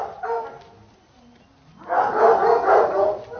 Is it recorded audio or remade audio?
recorded